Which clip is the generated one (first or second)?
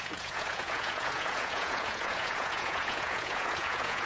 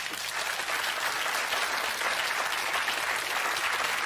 first